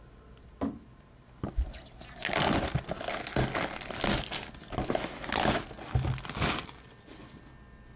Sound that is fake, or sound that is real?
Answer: real